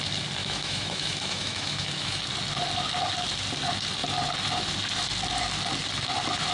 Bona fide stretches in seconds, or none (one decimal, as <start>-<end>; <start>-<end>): 0.0-0.4; 2.2-6.5